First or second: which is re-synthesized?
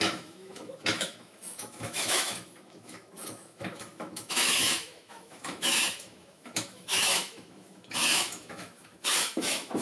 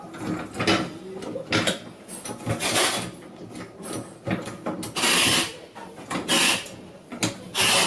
first